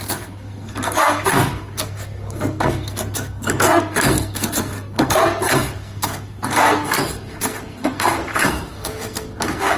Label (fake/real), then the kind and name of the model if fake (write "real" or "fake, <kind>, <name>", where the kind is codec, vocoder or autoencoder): fake, codec, SNAC